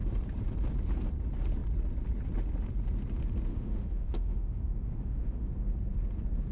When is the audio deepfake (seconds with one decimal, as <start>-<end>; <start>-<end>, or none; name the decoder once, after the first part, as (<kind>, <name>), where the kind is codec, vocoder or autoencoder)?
3.5-5.5 (autoencoder, DAC-VAE)